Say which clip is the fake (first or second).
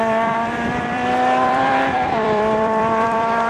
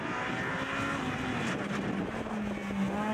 first